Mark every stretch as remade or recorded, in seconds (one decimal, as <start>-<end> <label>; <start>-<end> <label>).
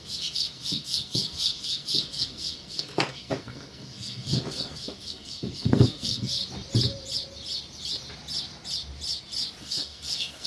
0.0-6.4 remade; 6.4-9.6 recorded; 9.6-10.5 remade